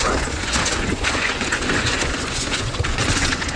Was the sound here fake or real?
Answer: fake